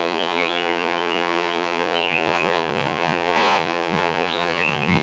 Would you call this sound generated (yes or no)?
yes